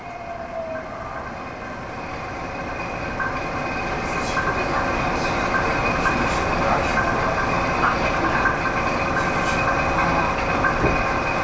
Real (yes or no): yes